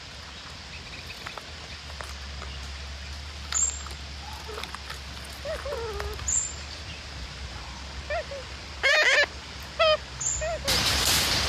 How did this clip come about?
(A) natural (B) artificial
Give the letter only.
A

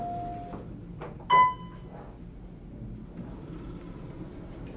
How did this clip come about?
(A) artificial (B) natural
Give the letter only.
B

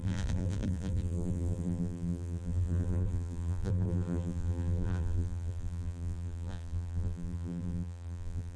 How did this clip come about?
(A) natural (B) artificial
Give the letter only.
B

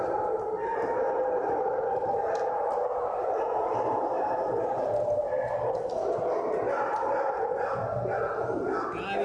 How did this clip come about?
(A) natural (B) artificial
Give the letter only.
A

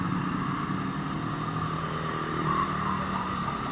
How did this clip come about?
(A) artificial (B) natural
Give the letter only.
B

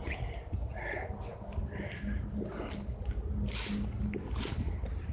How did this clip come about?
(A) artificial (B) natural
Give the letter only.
B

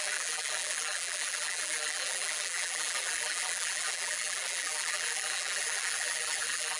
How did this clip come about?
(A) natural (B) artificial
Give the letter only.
B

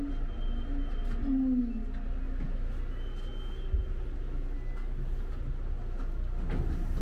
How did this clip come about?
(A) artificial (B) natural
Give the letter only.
B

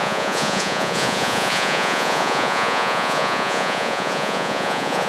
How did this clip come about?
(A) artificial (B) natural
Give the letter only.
A